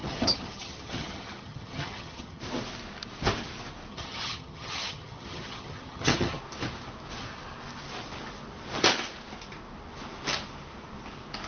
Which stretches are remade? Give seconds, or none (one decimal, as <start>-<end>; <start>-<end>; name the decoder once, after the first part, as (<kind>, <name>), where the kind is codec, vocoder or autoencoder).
0.0-2.4 (vocoder, HiFi-GAN); 3.9-6.4